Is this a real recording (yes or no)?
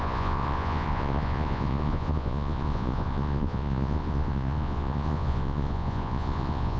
no